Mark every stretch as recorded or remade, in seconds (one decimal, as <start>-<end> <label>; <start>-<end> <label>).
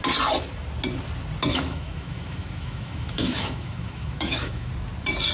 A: 0.0-1.5 recorded; 1.5-4.7 remade; 4.7-5.3 recorded